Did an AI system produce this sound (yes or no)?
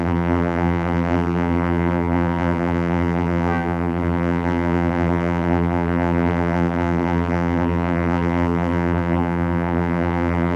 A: yes